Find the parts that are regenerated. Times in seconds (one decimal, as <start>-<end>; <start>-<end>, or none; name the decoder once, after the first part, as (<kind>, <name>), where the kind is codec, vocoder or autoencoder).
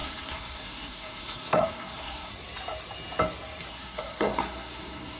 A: 0.0-2.3 (codec, SNAC); 3.7-5.2